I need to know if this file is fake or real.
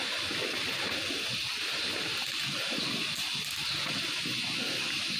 real